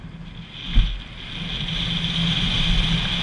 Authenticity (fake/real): real